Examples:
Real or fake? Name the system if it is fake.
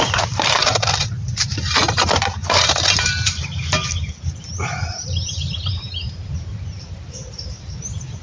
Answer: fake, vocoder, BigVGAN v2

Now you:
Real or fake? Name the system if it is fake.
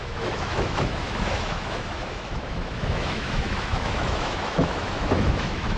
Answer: fake, autoencoder, DAC-VAE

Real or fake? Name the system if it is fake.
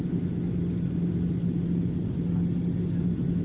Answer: real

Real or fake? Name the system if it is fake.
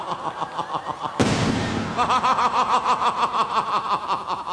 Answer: real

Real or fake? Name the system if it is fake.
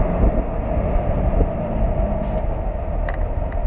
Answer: real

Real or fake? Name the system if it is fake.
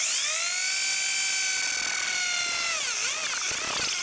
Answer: real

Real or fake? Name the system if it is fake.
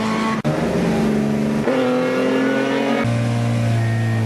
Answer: real